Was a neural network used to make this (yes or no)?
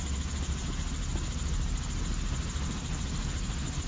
no